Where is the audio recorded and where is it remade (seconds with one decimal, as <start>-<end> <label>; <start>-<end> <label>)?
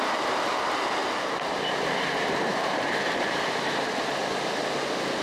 0.0-1.0 recorded; 1.0-4.1 remade; 4.1-5.2 recorded